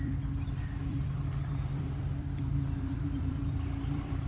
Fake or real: fake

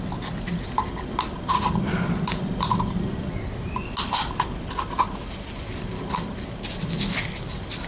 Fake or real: real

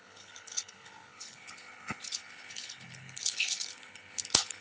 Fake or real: fake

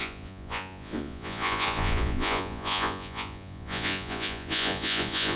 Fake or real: fake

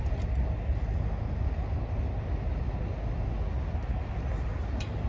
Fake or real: real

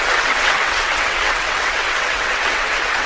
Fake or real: fake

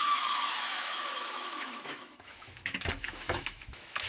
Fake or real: fake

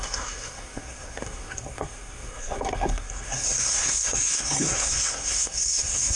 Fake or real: fake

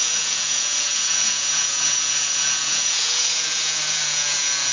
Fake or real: fake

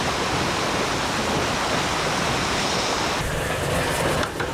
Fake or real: real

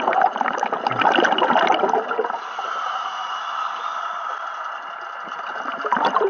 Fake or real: real